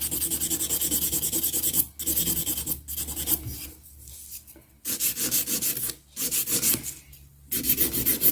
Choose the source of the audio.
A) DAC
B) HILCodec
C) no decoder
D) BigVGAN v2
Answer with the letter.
C